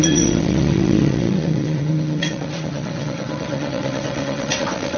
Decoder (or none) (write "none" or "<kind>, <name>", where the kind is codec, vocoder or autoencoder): vocoder, WaveNeXt